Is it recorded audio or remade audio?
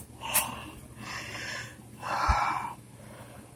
recorded